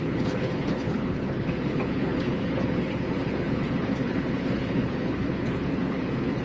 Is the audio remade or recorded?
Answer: remade